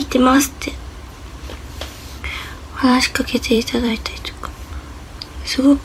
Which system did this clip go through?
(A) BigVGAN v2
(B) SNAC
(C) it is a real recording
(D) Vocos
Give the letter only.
A